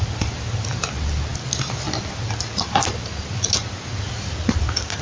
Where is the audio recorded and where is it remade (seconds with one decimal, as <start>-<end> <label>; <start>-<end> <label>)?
0.0-5.0 recorded